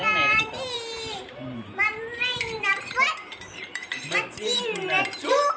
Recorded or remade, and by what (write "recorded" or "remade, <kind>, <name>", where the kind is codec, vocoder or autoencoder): remade, vocoder, BigVGAN v2